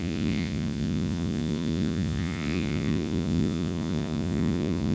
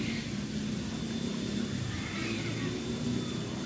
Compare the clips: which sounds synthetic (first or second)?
first